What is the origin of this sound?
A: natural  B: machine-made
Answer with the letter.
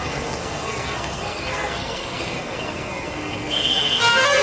B